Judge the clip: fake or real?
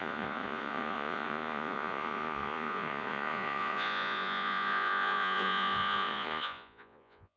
fake